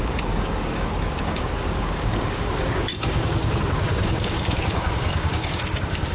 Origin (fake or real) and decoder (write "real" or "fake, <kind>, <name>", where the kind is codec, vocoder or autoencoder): fake, codec, DAC